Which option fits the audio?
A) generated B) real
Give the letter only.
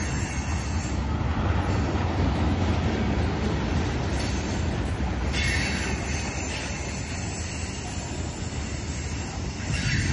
B